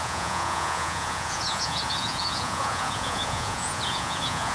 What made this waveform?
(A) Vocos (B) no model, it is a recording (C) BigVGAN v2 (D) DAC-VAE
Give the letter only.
A